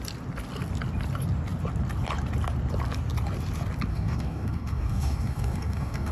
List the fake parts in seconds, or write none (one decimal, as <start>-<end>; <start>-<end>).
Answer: 3.9-6.1